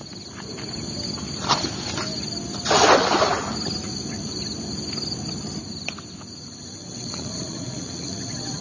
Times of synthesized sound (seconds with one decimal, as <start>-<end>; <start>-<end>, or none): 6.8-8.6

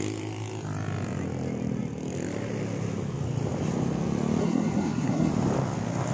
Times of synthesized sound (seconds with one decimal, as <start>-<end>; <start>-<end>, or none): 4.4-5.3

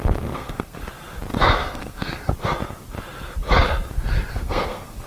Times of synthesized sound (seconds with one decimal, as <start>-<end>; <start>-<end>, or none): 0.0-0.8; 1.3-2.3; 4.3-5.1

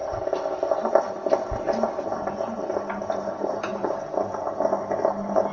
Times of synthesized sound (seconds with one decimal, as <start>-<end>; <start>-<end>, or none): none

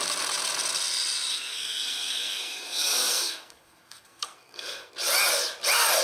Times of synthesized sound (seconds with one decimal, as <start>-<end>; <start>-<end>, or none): 1.3-4.9

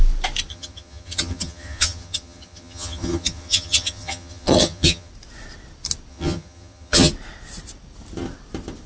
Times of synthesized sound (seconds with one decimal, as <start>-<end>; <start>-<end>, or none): 0.5-5.1; 6.1-7.1

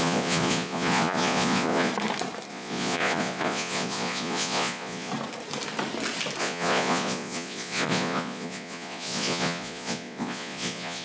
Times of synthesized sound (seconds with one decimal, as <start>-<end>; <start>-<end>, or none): 0.0-1.9; 2.5-5.1; 6.4-11.0